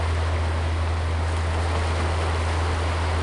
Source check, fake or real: real